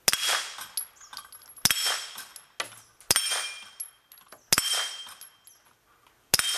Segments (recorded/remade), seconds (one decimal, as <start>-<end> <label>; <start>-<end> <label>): 0.0-6.6 recorded